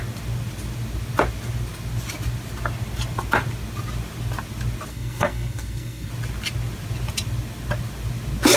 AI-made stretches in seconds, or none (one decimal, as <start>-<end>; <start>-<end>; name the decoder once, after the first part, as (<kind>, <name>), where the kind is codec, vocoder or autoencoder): 4.9-6.1 (codec, SNAC)